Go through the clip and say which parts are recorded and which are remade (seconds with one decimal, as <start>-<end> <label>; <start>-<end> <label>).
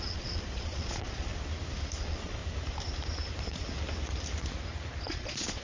0.0-1.3 remade; 1.3-2.0 recorded; 2.0-2.4 remade; 2.4-5.0 recorded; 5.0-5.6 remade